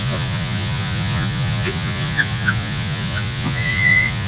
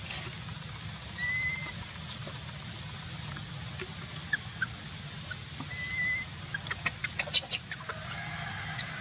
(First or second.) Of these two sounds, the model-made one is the first